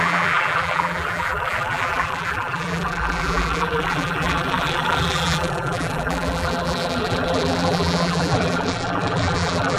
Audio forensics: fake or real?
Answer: fake